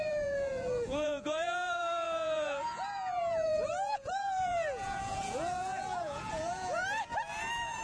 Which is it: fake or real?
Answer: fake